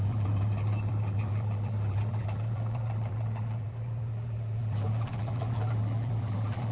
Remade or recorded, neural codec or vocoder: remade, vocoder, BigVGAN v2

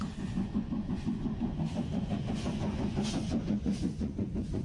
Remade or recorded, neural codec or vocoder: remade, vocoder, Vocos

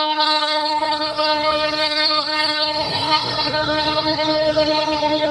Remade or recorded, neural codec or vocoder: remade, codec, SNAC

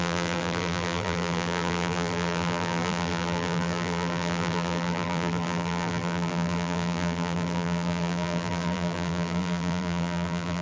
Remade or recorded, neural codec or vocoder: remade, vocoder, BigVGAN v2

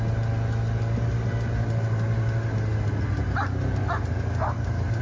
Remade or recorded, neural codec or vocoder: recorded